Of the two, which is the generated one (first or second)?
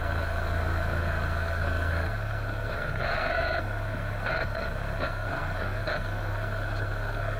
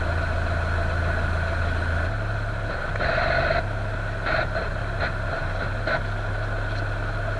first